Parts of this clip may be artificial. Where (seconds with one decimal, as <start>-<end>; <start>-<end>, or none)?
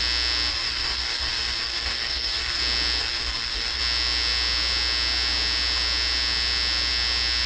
0.5-2.6; 3.0-3.8